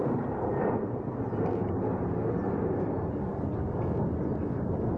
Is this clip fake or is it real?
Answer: real